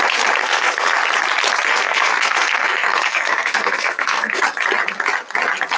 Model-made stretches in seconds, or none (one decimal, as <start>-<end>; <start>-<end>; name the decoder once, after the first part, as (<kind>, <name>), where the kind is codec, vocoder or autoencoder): 0.4-1.0 (codec, SNAC); 1.7-4.4